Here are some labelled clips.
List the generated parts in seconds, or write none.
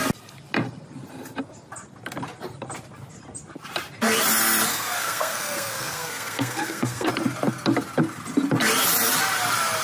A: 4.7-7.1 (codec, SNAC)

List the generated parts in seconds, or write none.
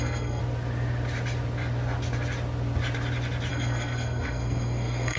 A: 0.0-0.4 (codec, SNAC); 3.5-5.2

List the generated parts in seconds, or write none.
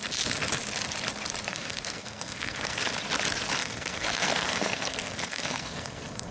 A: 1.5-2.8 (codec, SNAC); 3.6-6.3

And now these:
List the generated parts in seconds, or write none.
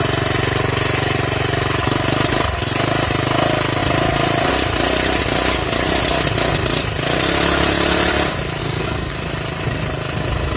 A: 8.6-9.1 (codec, SNAC)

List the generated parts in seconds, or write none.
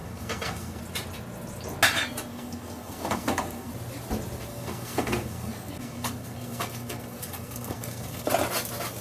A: 0.0-0.8 (codec, SNAC); 2.3-3.7; 4.5-8.3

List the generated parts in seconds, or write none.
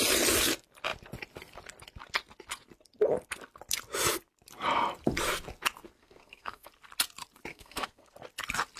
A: 6.0-6.7 (codec, SNAC); 7.5-8.1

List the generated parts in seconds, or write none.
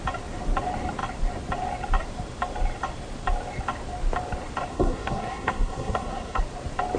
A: 4.7-6.4 (codec, SNAC)